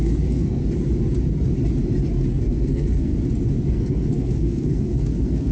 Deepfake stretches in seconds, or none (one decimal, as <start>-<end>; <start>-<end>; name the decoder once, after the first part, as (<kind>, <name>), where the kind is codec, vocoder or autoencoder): 0.0-0.6 (codec, SNAC); 2.3-3.1; 3.7-5.5